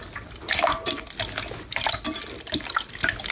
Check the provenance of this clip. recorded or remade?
recorded